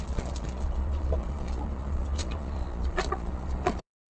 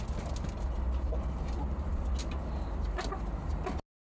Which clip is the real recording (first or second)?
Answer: second